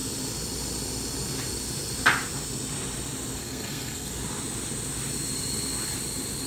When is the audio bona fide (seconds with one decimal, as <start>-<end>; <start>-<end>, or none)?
0.0-3.4; 4.1-6.5